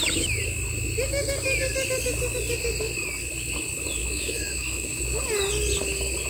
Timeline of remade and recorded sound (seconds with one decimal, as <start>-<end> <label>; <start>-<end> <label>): 0.0-4.0 recorded; 4.0-5.0 remade; 5.0-6.3 recorded